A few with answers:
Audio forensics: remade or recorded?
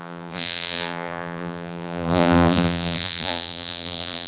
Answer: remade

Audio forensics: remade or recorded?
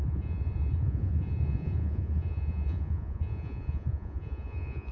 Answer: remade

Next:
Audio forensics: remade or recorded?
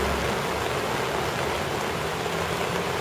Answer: recorded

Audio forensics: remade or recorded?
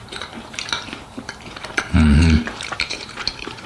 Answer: remade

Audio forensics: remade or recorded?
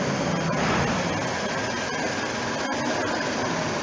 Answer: recorded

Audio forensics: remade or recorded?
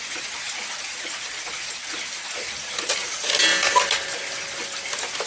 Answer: recorded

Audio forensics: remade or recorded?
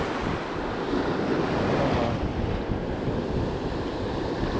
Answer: recorded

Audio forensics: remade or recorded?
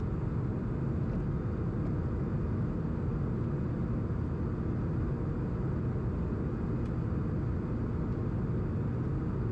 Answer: recorded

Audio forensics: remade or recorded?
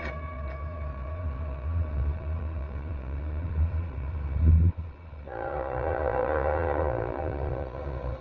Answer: remade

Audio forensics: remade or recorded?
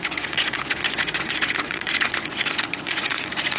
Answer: remade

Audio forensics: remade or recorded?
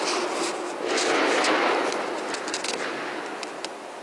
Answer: recorded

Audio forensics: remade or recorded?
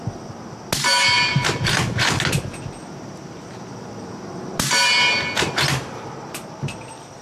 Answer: recorded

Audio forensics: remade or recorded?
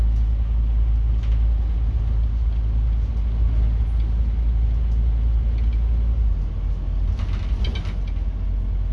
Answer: recorded